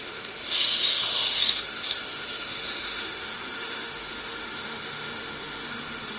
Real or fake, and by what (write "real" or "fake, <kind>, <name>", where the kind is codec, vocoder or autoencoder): fake, autoencoder, DAC-VAE